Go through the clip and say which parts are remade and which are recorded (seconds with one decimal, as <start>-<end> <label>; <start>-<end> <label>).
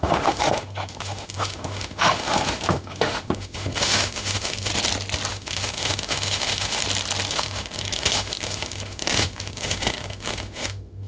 0.0-4.7 remade; 4.7-5.3 recorded; 5.3-6.8 remade; 6.8-7.3 recorded; 7.3-11.1 remade